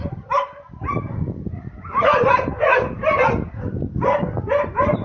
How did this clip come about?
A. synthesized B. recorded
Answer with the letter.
B